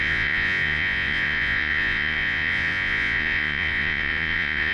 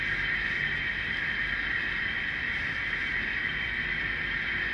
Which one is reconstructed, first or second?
first